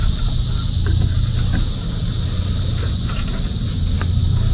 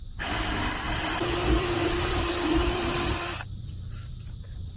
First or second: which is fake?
second